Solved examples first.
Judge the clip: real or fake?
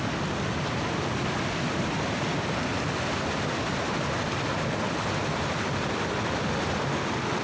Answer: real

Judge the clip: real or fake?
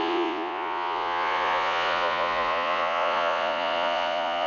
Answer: fake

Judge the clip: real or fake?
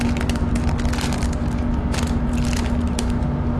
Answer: real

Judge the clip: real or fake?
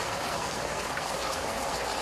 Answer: fake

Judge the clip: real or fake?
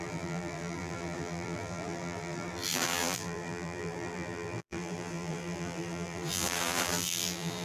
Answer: fake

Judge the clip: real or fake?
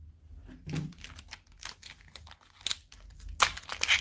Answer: real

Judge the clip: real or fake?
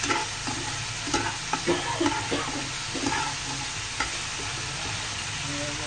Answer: real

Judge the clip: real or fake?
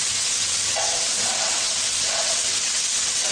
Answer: fake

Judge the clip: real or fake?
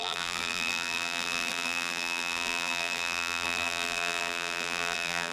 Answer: fake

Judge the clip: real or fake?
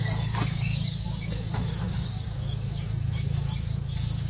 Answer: fake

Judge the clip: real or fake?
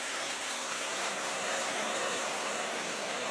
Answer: fake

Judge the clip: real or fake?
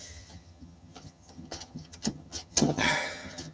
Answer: fake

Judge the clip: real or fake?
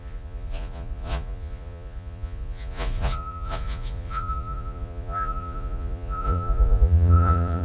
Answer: fake